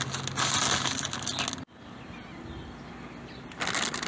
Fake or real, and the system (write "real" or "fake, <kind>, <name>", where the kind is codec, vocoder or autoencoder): real